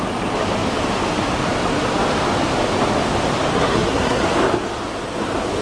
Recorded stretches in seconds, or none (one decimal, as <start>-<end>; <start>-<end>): 0.0-3.5; 4.3-5.6